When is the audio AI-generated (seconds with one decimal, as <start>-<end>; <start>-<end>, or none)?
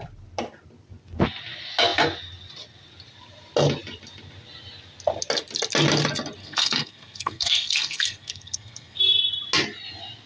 6.4-9.0